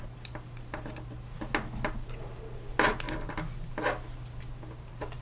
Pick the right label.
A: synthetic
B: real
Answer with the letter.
B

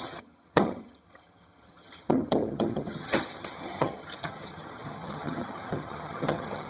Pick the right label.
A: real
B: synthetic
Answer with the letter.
B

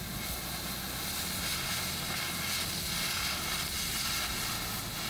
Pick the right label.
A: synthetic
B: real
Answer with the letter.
B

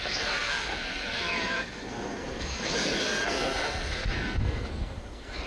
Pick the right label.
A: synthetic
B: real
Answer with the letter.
A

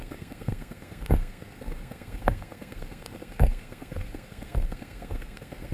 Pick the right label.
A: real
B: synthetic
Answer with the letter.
B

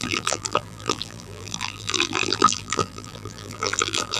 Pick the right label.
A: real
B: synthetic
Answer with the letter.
B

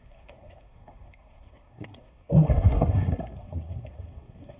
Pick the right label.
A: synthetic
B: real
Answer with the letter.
A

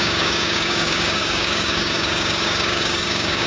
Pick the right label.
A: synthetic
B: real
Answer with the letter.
A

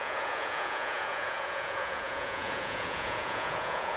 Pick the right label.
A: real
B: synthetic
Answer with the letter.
B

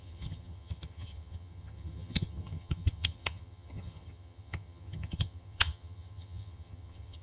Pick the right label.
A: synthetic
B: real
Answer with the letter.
A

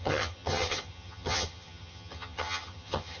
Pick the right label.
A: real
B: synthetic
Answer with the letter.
B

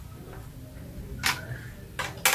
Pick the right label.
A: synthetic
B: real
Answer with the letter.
B